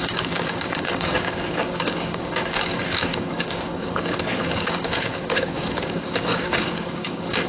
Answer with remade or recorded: remade